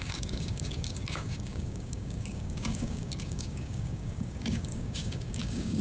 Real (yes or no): no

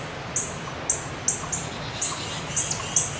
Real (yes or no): yes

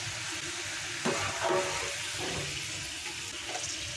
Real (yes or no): yes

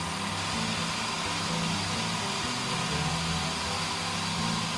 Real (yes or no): yes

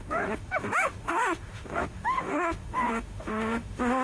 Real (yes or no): no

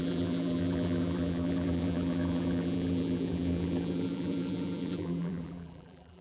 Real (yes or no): no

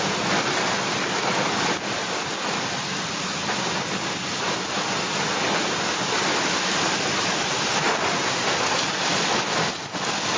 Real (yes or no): yes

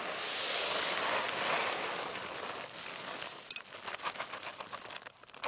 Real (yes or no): yes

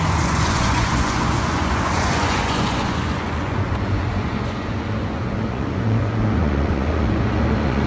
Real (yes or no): no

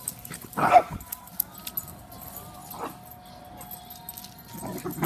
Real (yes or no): yes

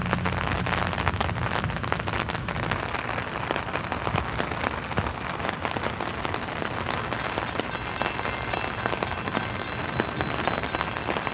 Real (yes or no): yes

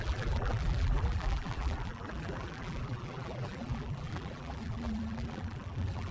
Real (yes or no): no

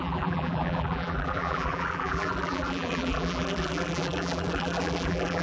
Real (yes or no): no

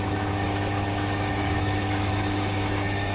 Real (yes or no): no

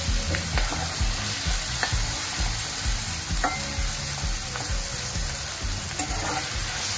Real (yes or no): yes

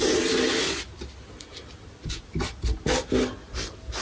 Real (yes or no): yes